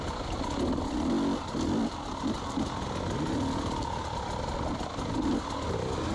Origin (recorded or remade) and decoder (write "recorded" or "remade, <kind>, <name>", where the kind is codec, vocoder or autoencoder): recorded